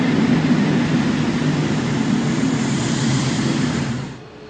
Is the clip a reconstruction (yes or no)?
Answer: no